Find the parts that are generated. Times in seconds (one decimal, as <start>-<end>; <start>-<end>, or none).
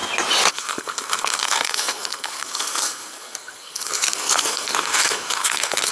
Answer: 0.5-5.9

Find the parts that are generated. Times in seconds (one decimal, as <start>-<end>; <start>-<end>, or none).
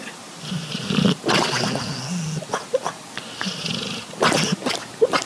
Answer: none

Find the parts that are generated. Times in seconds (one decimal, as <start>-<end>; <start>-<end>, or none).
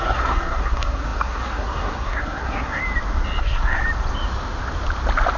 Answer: 0.0-2.8; 3.4-3.8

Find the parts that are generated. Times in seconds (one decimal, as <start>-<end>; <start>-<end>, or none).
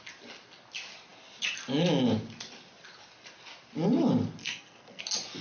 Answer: 4.4-5.0